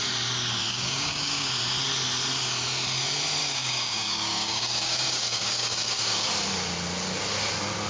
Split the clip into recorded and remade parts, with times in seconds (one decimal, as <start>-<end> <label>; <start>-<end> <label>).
0.0-0.7 recorded; 0.7-1.5 remade; 1.5-3.4 recorded; 3.4-6.3 remade; 6.3-7.9 recorded